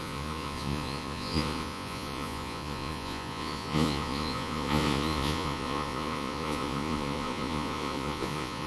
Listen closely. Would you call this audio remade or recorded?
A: remade